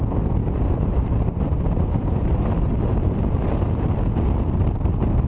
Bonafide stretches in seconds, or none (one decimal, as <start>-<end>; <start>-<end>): 0.0-0.4; 3.4-5.3